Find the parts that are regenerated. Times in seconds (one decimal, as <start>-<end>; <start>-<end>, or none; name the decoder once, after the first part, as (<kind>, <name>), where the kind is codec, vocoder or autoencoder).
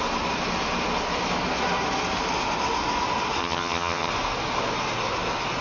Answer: 3.4-4.1 (vocoder, HiFi-GAN)